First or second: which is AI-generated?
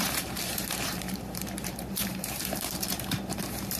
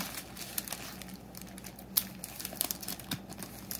first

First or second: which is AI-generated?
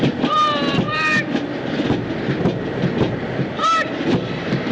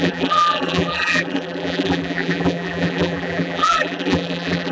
second